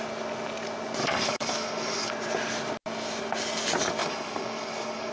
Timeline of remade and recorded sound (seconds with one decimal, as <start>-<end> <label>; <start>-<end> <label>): 0.0-1.0 recorded; 1.0-2.1 remade; 2.1-4.0 recorded; 4.0-5.1 remade

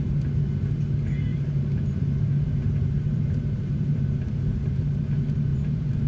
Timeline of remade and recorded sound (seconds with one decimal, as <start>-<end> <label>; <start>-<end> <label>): 0.0-1.3 recorded; 1.3-5.0 remade; 5.0-5.5 recorded; 5.5-6.1 remade

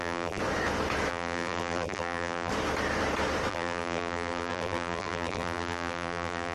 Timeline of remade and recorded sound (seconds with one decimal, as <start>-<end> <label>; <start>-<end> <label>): 0.0-0.4 remade; 0.4-1.1 recorded; 1.1-2.5 remade; 2.5-3.5 recorded; 3.5-6.5 remade